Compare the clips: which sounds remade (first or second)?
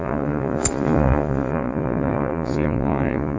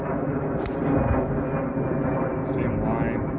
first